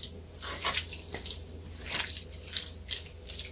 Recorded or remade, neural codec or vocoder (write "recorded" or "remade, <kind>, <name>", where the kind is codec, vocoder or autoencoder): recorded